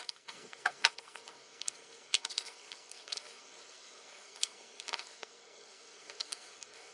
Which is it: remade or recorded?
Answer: remade